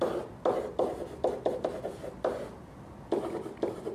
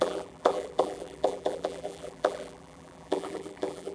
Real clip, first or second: first